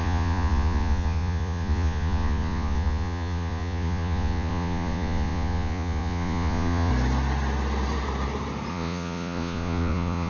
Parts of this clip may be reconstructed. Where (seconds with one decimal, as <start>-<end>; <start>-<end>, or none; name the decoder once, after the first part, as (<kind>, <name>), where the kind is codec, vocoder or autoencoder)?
0.0-6.9 (vocoder, Vocos); 8.7-10.3